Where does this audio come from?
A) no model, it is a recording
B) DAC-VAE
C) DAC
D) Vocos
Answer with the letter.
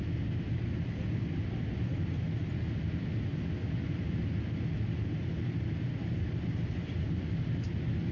A